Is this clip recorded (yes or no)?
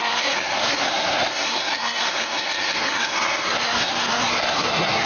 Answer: no